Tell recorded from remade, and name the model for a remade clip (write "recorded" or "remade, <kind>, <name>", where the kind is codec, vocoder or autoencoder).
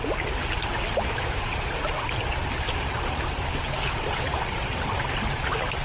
recorded